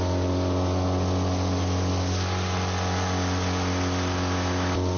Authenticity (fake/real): real